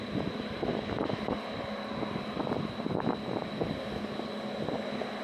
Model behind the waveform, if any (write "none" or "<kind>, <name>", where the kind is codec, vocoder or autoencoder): none